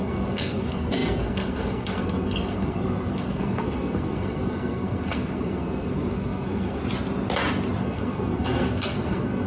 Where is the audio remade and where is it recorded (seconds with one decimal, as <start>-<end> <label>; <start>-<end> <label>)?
0.0-6.8 remade; 6.8-7.8 recorded; 7.8-9.5 remade